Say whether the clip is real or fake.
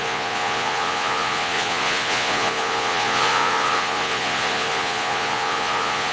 fake